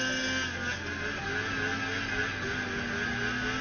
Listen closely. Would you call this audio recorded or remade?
recorded